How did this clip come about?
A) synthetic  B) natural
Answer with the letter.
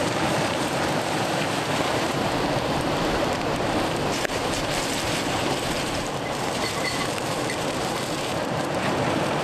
A